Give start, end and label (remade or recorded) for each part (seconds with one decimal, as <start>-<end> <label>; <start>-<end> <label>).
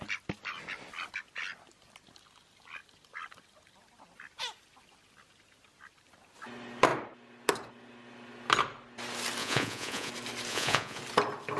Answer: 0.0-9.4 recorded; 9.4-10.1 remade; 10.1-10.5 recorded; 10.5-11.0 remade; 11.0-11.6 recorded